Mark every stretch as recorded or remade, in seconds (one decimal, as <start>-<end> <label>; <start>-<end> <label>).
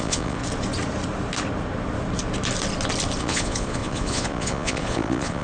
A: 0.0-0.4 remade; 0.4-3.2 recorded; 3.2-5.4 remade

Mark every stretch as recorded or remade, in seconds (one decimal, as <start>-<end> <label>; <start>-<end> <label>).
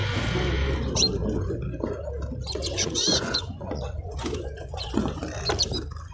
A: 0.0-2.6 recorded; 2.6-5.2 remade; 5.2-6.1 recorded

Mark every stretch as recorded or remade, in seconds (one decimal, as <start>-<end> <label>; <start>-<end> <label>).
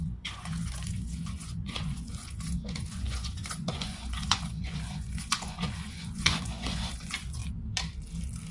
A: 0.0-7.4 remade; 7.4-8.5 recorded